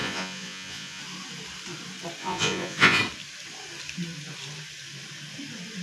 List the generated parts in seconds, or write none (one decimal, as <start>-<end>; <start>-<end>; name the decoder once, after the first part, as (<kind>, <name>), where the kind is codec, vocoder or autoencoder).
0.0-1.0 (vocoder, Vocos); 2.2-3.0